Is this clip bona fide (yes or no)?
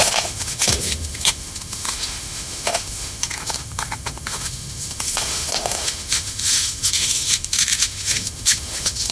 no